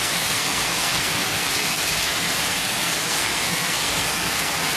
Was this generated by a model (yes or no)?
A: yes